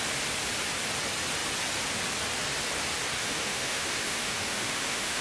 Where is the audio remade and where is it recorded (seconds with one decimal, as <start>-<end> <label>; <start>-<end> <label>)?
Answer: 0.0-3.2 recorded; 3.2-5.2 remade